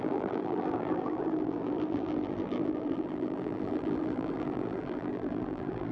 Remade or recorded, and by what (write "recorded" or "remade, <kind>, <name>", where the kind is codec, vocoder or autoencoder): remade, vocoder, BigVGAN v2